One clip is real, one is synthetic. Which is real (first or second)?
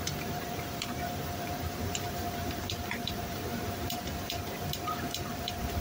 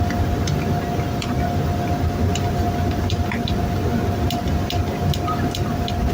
second